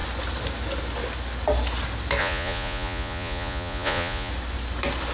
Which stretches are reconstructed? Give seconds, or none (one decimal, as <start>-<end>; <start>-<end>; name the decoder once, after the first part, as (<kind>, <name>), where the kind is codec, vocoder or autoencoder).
2.2-4.3 (vocoder, Vocos)